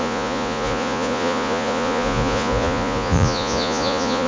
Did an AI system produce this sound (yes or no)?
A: yes